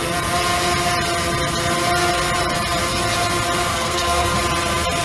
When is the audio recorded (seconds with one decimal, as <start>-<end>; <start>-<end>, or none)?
0.0-3.7; 4.4-5.0